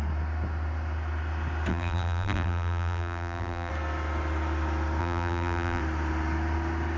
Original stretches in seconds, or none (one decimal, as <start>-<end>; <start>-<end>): 0.0-1.7; 3.7-5.0; 5.8-7.0